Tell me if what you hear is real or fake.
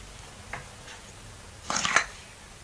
real